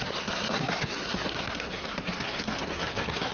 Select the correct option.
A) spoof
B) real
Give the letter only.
A